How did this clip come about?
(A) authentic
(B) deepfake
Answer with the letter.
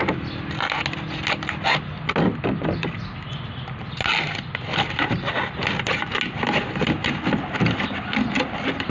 A